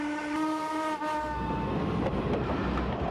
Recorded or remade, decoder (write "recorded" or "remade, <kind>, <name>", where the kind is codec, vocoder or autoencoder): recorded